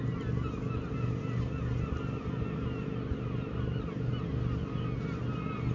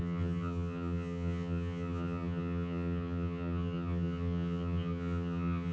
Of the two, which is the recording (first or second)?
first